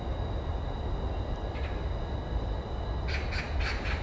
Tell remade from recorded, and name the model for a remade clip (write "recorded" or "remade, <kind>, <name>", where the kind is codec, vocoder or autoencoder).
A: recorded